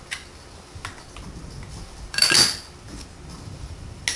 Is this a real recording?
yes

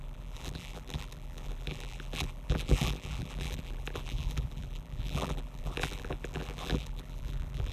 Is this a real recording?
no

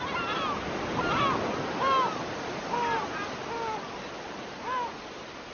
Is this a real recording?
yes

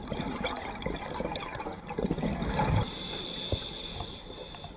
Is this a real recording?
yes